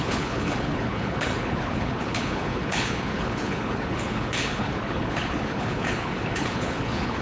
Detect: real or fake fake